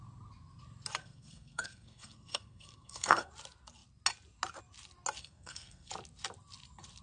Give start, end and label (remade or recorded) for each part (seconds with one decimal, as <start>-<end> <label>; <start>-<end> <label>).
0.0-1.0 recorded; 1.0-3.3 remade; 3.3-5.2 recorded; 5.2-5.9 remade; 5.9-7.0 recorded